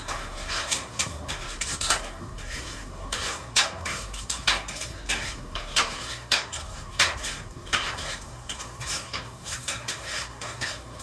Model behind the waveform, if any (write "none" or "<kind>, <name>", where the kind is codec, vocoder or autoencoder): codec, SNAC